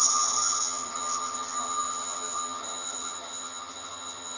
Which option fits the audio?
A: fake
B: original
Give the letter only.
A